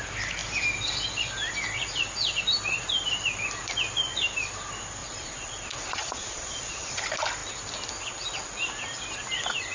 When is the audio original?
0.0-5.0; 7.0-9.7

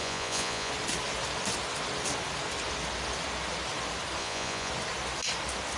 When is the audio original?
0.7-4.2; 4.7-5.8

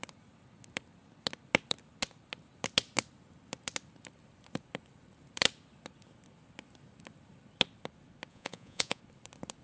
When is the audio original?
0.0-8.3; 9.0-9.6

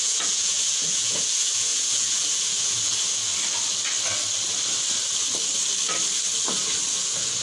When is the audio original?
3.3-6.9